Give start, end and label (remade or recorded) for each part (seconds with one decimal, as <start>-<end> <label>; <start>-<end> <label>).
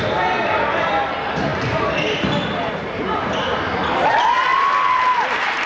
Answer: 0.0-5.7 recorded